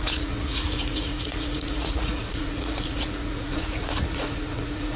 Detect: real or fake fake